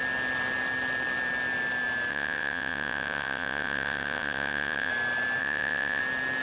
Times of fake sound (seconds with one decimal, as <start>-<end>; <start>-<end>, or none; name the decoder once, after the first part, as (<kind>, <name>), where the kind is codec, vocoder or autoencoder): 2.1-4.9 (vocoder, WaveNeXt); 5.4-6.0